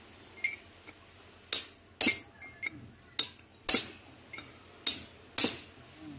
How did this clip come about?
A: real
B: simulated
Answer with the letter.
A